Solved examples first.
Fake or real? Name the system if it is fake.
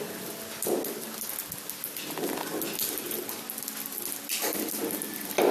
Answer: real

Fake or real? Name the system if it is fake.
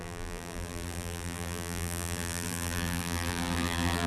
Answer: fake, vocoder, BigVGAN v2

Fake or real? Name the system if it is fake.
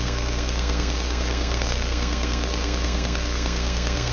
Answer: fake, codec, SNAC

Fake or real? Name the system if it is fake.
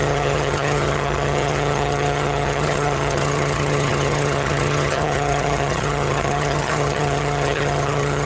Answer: fake, vocoder, HiFi-GAN